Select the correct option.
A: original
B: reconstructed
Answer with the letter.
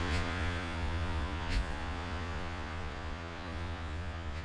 B